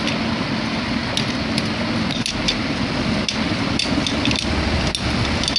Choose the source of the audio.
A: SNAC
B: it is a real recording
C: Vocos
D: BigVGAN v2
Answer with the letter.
B